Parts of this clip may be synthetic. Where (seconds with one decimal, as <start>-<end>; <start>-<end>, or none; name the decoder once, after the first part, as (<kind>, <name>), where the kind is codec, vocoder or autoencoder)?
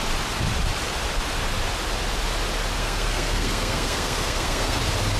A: 2.8-4.8 (codec, SNAC)